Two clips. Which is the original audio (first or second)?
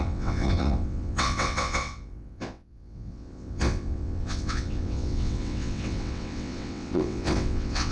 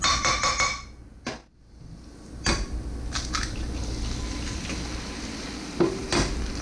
second